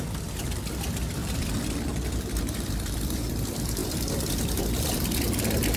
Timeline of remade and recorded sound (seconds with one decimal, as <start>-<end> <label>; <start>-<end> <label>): 0.0-5.8 remade